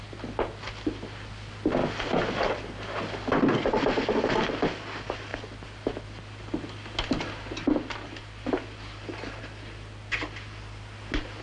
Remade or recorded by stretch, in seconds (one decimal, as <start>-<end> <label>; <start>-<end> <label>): 0.0-11.4 recorded